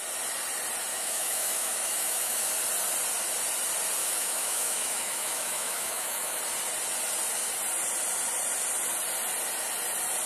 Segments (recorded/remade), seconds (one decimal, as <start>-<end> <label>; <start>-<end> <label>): 0.0-0.9 recorded; 0.9-2.5 remade; 2.5-4.0 recorded; 4.0-6.4 remade; 6.4-10.3 recorded